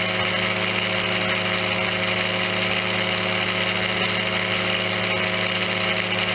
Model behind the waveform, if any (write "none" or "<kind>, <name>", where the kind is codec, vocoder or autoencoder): none